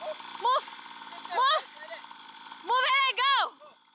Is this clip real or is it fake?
real